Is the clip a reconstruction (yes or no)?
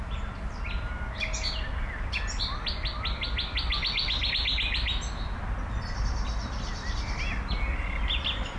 no